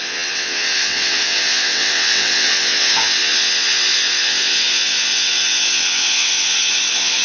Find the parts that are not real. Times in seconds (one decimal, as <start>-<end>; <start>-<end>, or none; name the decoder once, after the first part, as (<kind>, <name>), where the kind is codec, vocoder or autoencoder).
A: 0.0-7.2 (vocoder, WaveNeXt)